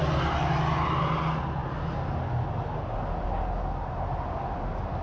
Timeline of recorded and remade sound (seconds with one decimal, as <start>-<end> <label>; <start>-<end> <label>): 0.0-5.0 recorded